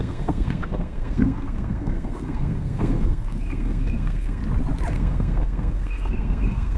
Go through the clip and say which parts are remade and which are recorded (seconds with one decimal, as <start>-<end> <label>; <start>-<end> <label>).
0.0-4.4 remade; 4.4-4.9 recorded; 4.9-6.8 remade